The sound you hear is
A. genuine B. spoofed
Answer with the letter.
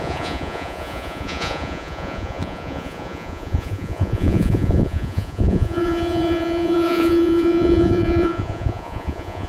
B